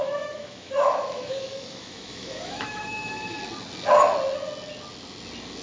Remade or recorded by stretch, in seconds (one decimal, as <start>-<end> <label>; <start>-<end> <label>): 0.0-3.4 remade; 3.4-5.6 recorded